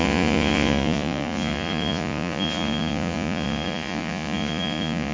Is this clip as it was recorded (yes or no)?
no